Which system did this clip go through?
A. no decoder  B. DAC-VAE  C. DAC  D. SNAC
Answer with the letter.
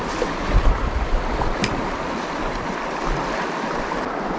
A